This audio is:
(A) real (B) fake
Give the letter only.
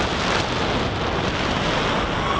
A